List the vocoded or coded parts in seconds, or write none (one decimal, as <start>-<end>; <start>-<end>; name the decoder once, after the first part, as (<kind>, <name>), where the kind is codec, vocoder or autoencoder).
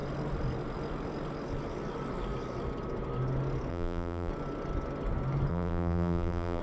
3.7-4.3 (vocoder, BigVGAN v2); 5.5-6.6